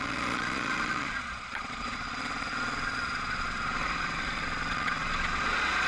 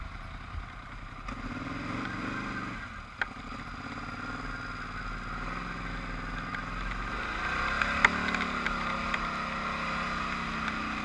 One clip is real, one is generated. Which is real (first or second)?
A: second